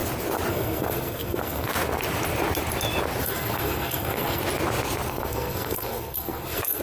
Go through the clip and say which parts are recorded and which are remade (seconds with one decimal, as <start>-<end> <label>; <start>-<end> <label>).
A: 0.0-0.5 recorded; 0.5-1.7 remade; 1.7-3.2 recorded; 3.2-4.4 remade; 4.4-5.1 recorded; 5.1-6.8 remade